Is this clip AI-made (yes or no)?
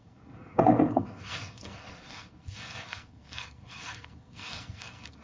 yes